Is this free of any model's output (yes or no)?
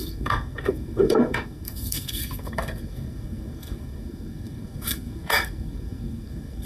no